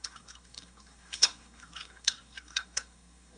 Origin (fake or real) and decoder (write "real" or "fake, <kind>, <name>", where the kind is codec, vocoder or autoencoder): fake, codec, SNAC